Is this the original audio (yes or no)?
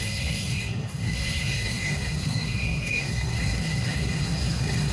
no